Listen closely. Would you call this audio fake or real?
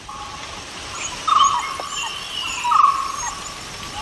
real